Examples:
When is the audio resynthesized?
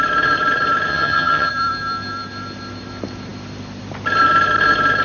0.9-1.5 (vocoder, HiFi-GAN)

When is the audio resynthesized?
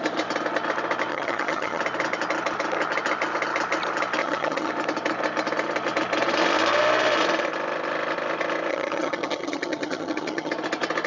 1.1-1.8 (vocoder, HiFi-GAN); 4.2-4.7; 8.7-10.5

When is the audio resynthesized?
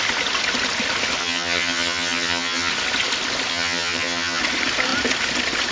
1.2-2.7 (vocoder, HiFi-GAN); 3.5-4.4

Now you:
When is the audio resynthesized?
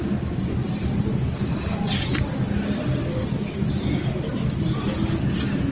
none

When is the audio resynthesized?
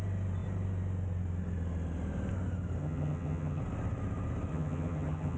2.8-3.6 (vocoder, HiFi-GAN); 4.5-5.4